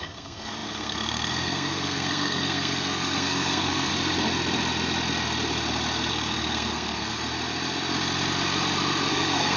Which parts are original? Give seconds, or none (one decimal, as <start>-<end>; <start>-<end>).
3.9-6.1; 7.2-9.1